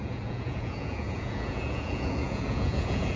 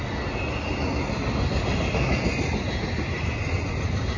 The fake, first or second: first